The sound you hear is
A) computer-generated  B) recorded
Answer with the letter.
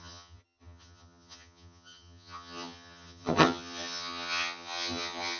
A